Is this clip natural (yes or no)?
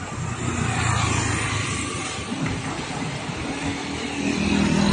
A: yes